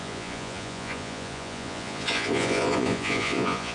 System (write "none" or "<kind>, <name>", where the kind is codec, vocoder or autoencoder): vocoder, Vocos